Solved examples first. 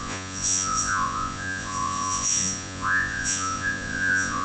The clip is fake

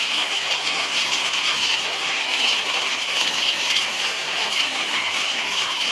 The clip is fake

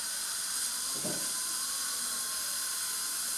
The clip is real